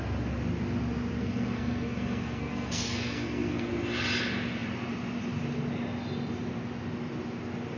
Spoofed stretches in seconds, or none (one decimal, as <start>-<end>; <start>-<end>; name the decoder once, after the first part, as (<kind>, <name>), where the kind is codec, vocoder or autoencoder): 1.2-3.7 (codec, SNAC)